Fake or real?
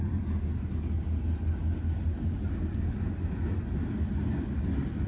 real